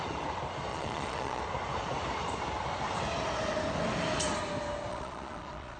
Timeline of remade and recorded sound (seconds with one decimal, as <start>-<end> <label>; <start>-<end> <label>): 0.0-0.7 recorded; 0.7-1.4 remade; 1.4-4.9 recorded; 4.9-5.8 remade